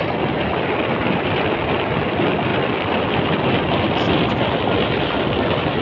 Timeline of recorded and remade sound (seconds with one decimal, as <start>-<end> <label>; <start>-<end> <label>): 0.0-5.8 remade